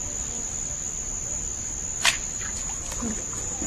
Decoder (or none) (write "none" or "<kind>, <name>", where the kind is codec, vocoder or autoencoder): none